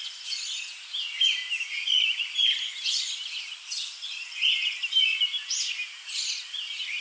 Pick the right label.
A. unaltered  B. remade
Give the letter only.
A